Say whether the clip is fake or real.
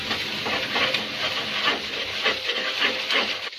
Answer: real